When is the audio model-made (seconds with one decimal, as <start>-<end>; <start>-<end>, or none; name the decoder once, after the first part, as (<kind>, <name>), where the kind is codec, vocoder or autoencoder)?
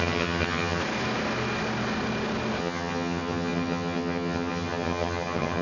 0.0-0.8 (vocoder, HiFi-GAN); 2.6-5.6